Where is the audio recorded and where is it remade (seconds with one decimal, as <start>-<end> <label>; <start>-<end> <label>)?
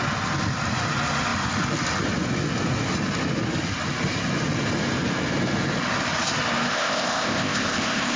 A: 0.0-6.7 recorded; 6.7-8.2 remade